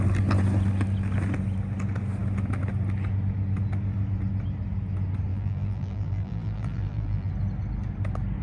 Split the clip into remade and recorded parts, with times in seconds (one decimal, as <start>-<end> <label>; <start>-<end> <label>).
0.0-5.3 recorded; 5.3-7.3 remade; 7.3-8.4 recorded